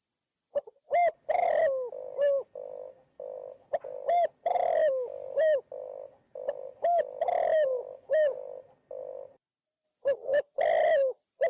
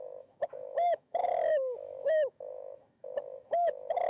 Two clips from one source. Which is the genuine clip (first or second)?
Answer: first